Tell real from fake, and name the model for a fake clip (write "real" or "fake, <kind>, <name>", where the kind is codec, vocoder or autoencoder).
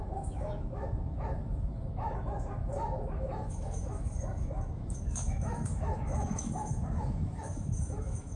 fake, autoencoder, DAC-VAE